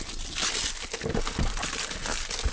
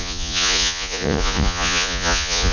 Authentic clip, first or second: first